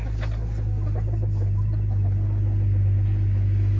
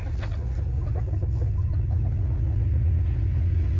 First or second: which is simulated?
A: second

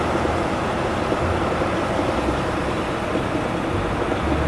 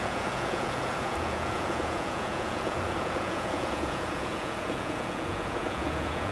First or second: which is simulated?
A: second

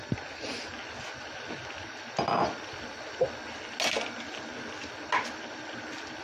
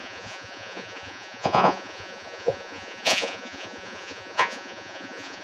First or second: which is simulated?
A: second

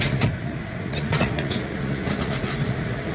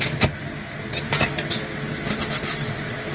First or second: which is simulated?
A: first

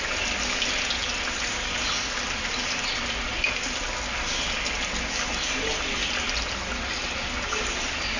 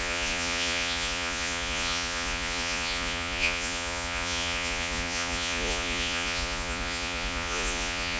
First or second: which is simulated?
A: second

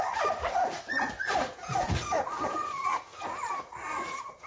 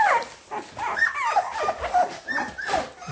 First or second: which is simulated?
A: first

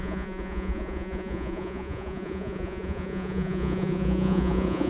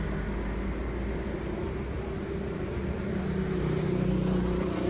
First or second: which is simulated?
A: first